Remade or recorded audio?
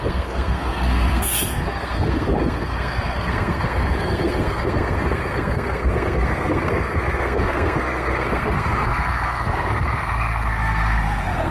remade